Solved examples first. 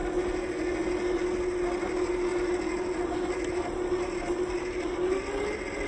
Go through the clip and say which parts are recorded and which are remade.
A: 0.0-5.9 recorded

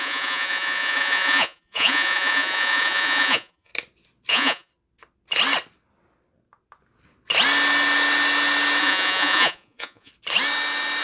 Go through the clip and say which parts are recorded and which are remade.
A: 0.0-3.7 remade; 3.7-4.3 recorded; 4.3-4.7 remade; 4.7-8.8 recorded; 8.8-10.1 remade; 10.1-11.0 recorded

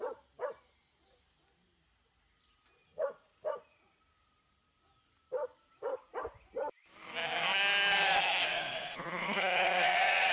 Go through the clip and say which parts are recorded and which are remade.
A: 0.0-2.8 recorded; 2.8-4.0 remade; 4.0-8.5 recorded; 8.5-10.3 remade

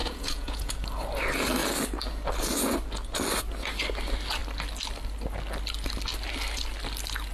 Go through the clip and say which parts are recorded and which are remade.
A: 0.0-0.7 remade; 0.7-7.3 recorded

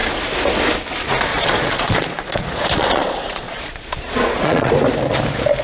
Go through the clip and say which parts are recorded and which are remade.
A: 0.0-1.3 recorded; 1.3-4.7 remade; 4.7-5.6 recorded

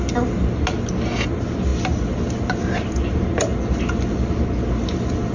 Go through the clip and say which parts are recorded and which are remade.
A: 0.0-5.3 recorded

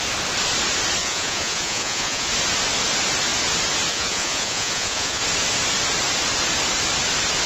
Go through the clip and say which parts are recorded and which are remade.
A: 0.0-1.0 recorded; 1.0-2.3 remade; 2.3-3.9 recorded; 3.9-5.2 remade; 5.2-7.5 recorded